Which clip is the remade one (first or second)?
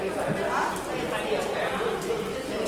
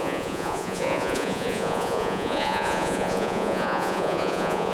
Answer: second